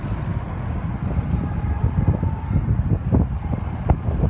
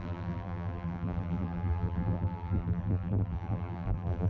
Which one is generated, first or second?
second